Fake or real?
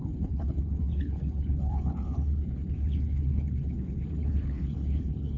fake